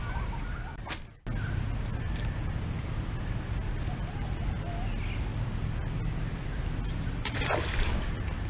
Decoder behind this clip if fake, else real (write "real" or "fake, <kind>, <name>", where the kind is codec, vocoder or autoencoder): real